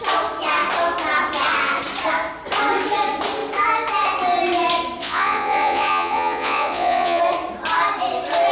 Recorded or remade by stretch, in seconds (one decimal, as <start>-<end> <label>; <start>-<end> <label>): 0.0-5.0 recorded; 5.0-7.2 remade; 7.2-8.5 recorded